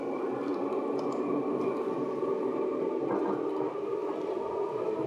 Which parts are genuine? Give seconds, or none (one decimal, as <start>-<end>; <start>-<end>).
0.0-5.1